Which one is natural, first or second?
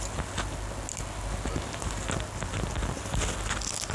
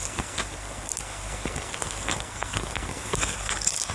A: first